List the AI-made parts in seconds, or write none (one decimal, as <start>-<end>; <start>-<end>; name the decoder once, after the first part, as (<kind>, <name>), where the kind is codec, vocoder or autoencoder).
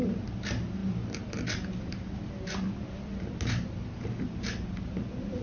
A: none